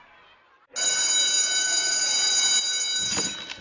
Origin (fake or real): real